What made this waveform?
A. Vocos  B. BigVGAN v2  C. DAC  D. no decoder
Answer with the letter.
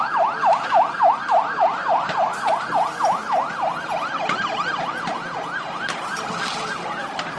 D